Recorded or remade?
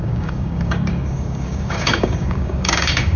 remade